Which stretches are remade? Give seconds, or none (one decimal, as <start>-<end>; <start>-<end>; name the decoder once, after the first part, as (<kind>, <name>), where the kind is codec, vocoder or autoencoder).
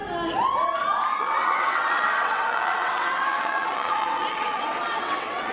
1.2-5.5 (vocoder, WaveNeXt)